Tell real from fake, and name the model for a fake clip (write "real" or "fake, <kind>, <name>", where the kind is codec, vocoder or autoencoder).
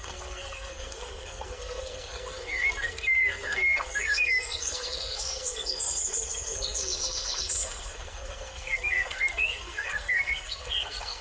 fake, codec, SNAC